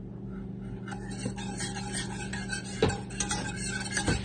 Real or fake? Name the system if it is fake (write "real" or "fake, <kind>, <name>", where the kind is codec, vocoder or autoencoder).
real